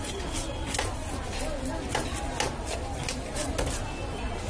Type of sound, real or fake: real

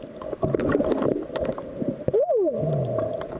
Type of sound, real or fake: real